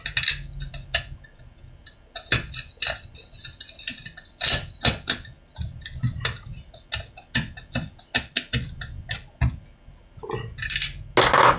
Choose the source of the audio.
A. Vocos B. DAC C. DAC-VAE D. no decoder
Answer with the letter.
D